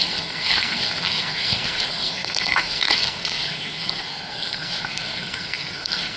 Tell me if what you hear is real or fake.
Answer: fake